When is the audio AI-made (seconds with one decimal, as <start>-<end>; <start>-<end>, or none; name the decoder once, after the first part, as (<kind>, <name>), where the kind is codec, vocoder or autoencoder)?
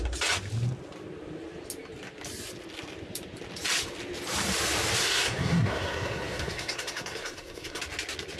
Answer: 5.0-7.8 (codec, SNAC)